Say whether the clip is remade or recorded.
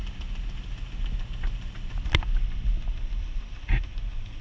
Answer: recorded